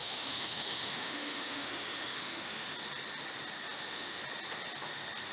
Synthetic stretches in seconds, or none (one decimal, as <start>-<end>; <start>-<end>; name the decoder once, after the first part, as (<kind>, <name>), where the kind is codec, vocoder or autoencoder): 0.0-2.7 (autoencoder, DAC-VAE); 3.8-4.2